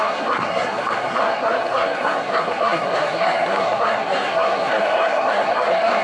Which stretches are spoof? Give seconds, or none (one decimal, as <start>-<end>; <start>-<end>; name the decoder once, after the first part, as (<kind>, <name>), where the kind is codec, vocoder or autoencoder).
0.0-6.0 (codec, SNAC)